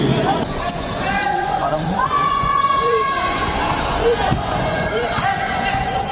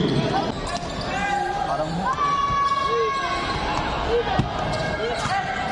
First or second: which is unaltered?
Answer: second